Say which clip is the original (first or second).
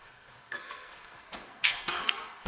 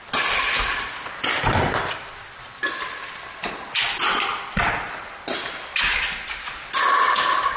second